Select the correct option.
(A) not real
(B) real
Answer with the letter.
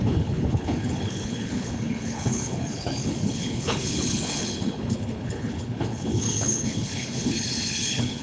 A